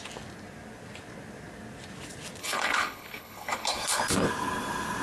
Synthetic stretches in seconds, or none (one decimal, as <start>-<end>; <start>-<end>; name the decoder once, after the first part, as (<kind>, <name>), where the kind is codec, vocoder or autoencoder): 2.4-4.0 (codec, HILCodec)